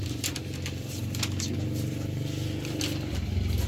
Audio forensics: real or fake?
real